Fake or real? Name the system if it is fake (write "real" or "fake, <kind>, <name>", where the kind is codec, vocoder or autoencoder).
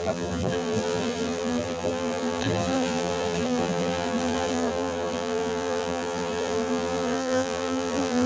fake, vocoder, BigVGAN v2